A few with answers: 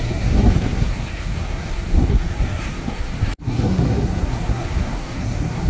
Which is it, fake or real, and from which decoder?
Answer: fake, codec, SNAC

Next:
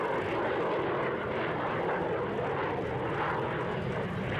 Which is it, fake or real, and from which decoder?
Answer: real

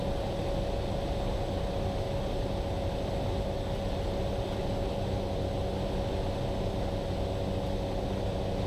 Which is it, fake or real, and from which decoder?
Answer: real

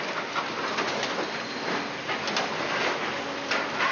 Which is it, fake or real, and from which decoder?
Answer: real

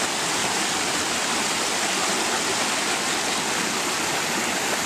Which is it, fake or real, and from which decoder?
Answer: real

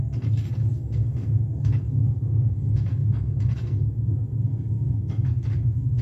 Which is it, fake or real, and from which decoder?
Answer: fake, codec, SNAC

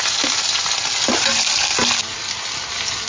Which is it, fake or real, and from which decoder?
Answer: real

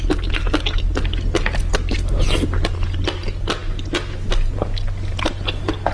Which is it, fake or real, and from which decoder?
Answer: real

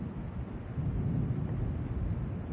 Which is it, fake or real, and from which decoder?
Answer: real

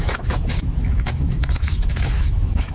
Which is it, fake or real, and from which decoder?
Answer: fake, autoencoder, DAC-VAE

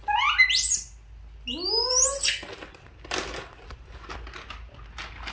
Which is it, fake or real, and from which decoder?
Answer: real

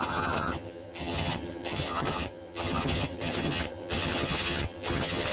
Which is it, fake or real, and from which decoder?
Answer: fake, vocoder, HiFi-GAN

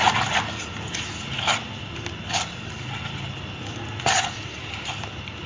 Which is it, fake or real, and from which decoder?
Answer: real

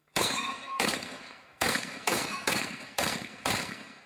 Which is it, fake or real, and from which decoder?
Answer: fake, codec, SNAC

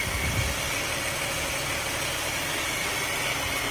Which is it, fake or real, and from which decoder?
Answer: real